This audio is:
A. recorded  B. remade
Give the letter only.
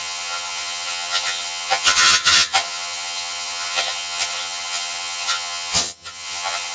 B